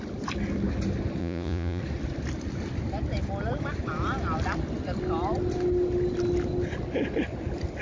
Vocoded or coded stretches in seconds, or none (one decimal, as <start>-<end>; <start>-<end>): 1.2-1.8